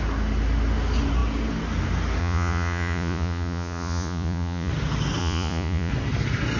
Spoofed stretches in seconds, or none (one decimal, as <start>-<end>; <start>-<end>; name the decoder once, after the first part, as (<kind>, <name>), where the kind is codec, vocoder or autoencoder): 2.2-4.7 (vocoder, Vocos); 5.2-5.9